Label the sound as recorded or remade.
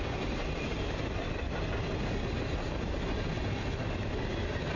recorded